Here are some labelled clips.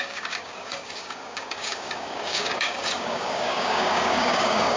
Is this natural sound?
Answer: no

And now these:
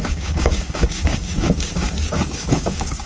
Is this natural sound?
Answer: no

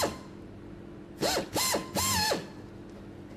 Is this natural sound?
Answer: yes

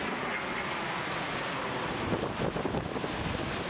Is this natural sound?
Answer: yes